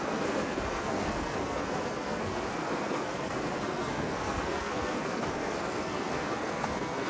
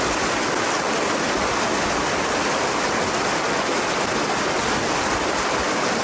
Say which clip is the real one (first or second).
second